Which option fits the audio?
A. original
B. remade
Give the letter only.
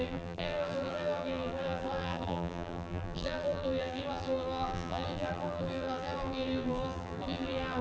B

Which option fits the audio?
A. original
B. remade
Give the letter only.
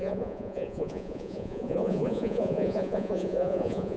B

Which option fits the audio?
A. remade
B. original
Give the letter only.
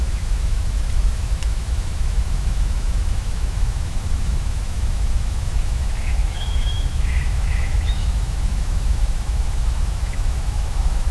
A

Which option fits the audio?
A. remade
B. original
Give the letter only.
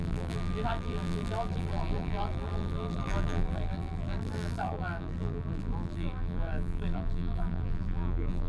A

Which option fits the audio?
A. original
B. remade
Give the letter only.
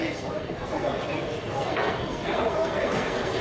B